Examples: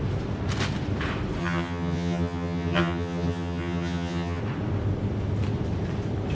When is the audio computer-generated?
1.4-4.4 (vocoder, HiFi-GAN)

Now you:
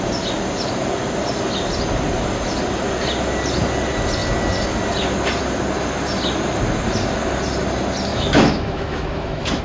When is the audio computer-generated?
8.1-9.6 (autoencoder, DAC-VAE)

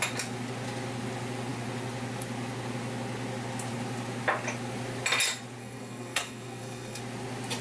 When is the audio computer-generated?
5.6-7.0 (codec, SNAC)

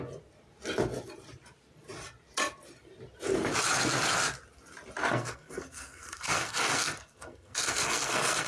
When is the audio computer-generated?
5.0-8.5 (codec, SNAC)

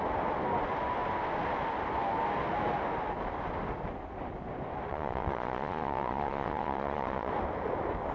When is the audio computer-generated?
4.9-7.3 (vocoder, Vocos)